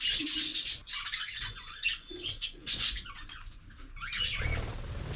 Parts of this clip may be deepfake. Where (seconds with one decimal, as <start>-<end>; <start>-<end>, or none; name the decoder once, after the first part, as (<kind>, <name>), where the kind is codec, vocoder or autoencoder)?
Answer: 0.5-3.6 (vocoder, Vocos)